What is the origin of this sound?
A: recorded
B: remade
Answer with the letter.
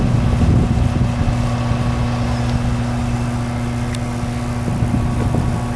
A